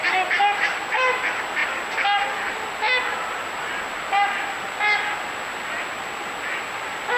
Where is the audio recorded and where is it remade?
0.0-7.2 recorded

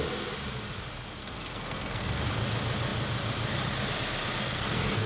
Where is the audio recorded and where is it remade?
0.0-1.2 recorded; 1.2-2.2 remade; 2.2-4.4 recorded; 4.4-5.1 remade

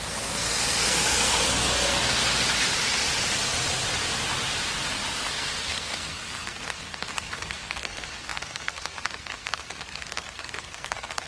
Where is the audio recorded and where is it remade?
0.0-2.2 remade; 2.2-5.3 recorded; 5.3-11.3 remade

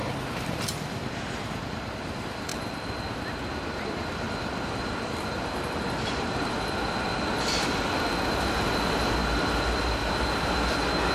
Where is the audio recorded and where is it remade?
0.0-11.1 recorded

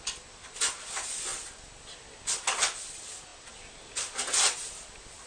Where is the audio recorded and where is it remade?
0.0-5.3 recorded

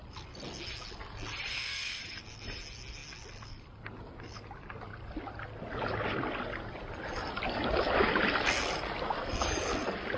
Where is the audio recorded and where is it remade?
0.0-1.5 recorded; 1.5-2.0 remade; 2.0-10.2 recorded

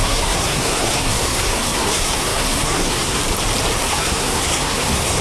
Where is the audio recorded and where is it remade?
0.0-3.2 remade; 3.2-3.8 recorded; 3.8-5.2 remade

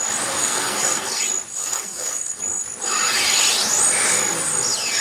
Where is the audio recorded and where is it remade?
0.0-0.4 recorded; 0.4-1.2 remade; 1.2-1.6 recorded; 1.6-2.4 remade; 2.4-5.0 recorded